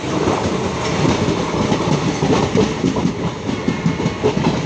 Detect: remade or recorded recorded